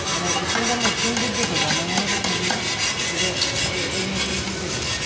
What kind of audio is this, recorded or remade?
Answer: recorded